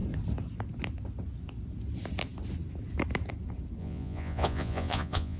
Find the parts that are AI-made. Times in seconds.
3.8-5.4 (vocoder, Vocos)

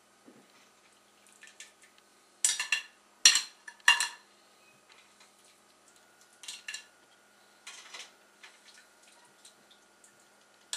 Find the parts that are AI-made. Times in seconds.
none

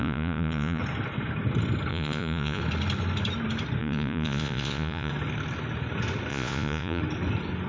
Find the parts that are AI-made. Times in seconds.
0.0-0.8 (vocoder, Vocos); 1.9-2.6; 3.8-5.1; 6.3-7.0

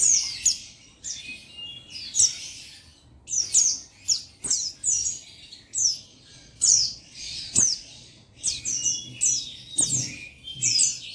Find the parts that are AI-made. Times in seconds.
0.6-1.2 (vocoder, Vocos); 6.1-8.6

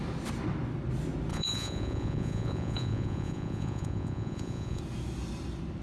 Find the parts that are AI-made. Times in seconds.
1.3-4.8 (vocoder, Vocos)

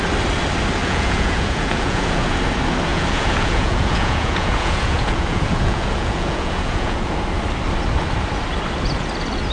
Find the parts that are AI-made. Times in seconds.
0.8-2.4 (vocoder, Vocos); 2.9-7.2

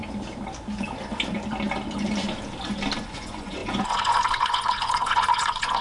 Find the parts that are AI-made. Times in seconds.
3.0-5.8 (vocoder, Vocos)